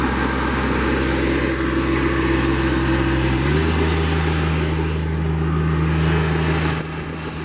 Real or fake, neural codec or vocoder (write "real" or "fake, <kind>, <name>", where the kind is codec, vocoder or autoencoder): real